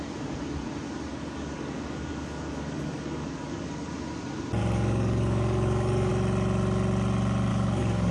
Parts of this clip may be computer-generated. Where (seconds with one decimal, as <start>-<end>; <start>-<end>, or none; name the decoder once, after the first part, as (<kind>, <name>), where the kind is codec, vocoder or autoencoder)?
1.1-3.9 (codec, DAC); 4.6-6.1; 7.5-8.1